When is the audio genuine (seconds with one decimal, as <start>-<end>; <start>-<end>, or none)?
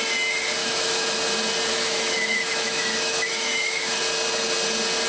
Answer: 0.0-0.6; 1.2-1.7; 4.0-5.1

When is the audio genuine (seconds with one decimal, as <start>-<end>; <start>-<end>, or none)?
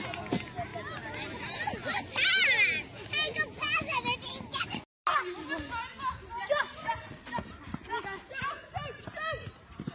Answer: 0.0-9.9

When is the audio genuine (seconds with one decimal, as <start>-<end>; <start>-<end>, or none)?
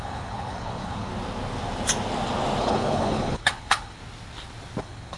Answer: 1.1-2.6; 4.0-4.8